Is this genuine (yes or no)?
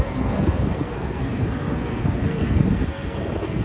no